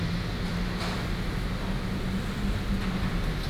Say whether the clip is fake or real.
real